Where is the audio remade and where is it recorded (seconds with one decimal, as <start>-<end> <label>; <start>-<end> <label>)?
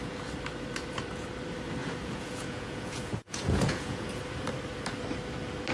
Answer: 0.0-1.8 recorded; 1.8-4.1 remade; 4.1-5.7 recorded